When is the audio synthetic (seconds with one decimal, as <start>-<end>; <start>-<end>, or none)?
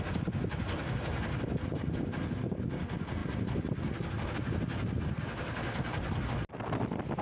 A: none